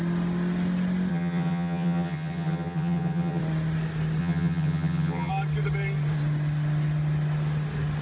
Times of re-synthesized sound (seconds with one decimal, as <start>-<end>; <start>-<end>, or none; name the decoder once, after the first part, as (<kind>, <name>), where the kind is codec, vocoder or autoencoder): 1.1-3.4 (vocoder, HiFi-GAN); 4.2-5.3